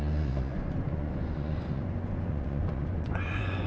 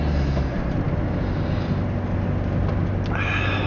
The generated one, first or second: first